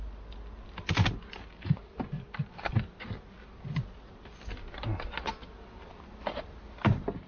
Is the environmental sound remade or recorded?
recorded